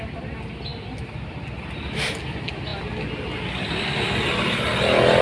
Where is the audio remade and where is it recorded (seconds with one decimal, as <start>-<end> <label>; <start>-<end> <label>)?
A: 0.0-5.2 recorded